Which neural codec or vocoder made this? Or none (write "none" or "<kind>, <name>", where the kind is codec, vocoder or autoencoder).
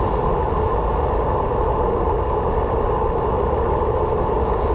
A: none